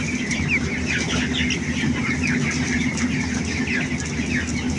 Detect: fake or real real